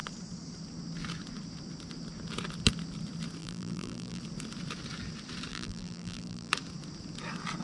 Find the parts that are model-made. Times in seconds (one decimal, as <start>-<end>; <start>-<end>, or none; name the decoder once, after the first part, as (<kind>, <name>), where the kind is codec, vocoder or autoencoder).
3.4-4.2 (vocoder, BigVGAN v2); 5.5-6.5